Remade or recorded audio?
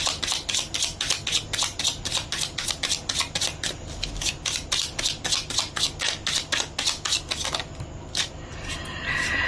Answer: recorded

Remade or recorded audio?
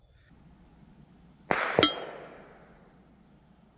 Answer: recorded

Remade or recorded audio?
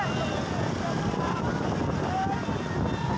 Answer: recorded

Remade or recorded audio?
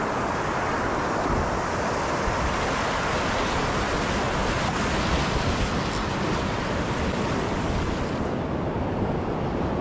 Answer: recorded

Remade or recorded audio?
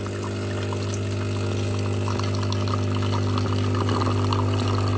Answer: recorded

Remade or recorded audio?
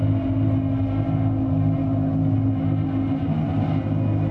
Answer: recorded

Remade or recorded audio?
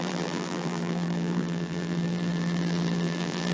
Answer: remade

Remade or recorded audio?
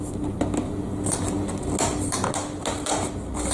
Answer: recorded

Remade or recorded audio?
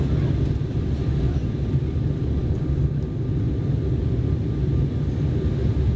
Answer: recorded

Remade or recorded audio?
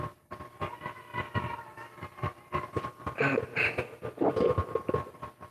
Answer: remade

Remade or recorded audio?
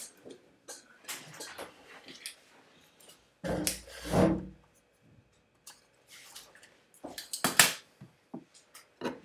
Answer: recorded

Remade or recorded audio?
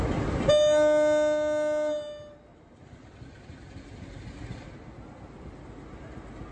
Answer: recorded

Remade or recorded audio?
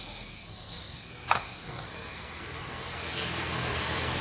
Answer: remade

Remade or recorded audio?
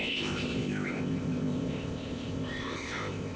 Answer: remade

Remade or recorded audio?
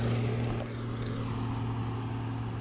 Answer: recorded